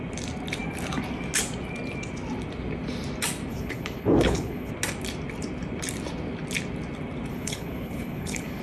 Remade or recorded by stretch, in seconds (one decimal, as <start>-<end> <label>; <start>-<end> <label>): 0.0-3.5 recorded; 3.5-4.7 remade; 4.7-7.3 recorded; 7.3-8.6 remade